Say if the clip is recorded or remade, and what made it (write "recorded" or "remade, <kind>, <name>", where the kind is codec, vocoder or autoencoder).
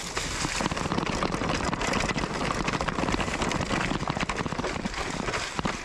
recorded